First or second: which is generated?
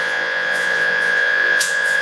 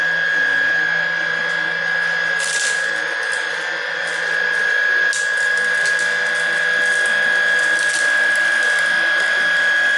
first